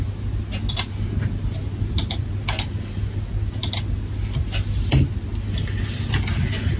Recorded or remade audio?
recorded